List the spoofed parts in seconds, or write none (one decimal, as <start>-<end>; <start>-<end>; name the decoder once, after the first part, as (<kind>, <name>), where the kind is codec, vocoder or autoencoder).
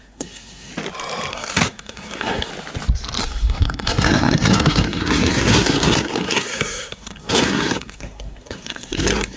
0.0-0.7 (codec, SNAC); 1.3-2.5; 3.2-9.4